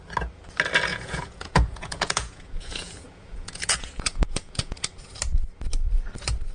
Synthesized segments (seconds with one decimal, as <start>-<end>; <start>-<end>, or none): 0.9-4.8